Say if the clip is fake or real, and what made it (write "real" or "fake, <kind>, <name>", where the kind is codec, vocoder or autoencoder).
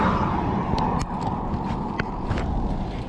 real